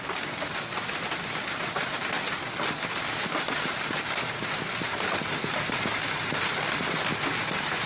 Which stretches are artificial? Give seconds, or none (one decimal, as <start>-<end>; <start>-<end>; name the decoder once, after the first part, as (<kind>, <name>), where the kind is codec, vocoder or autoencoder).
none